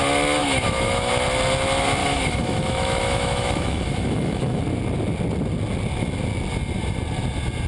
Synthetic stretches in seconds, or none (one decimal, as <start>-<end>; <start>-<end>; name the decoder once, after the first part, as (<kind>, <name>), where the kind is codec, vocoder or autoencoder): 0.4-1.1 (autoencoder, DAC-VAE); 2.0-4.6